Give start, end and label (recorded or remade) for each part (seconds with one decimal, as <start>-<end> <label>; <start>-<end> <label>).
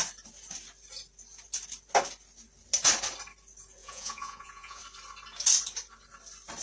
0.0-3.8 recorded; 3.8-4.8 remade; 4.8-6.6 recorded